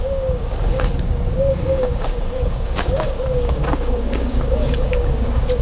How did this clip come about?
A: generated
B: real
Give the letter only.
A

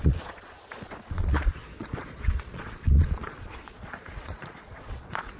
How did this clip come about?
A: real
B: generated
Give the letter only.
B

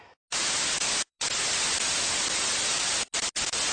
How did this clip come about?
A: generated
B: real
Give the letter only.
B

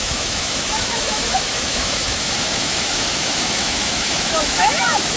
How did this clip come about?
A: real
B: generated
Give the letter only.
B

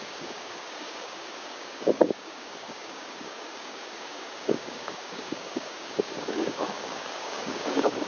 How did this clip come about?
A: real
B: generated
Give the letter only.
B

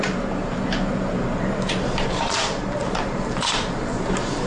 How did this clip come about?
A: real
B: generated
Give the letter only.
B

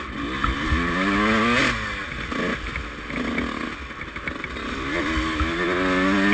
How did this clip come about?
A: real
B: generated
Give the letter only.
A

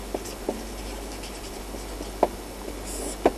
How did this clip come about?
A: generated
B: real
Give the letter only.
B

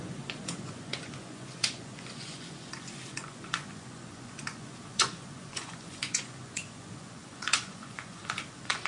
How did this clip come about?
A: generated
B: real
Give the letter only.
A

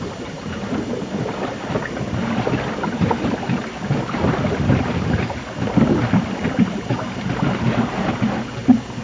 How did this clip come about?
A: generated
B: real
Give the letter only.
B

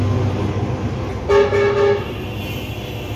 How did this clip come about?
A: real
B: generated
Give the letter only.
A